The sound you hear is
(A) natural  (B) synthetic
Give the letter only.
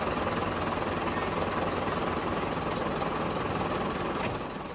A